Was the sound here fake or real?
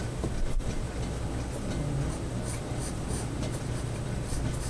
real